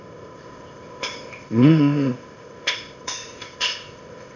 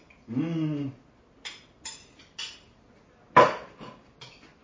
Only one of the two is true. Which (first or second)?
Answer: second